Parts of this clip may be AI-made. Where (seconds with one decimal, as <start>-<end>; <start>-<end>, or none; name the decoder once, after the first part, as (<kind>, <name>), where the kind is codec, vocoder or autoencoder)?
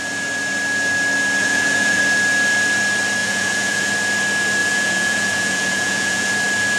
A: 1.4-2.0 (vocoder, Vocos); 3.2-3.9; 4.6-6.3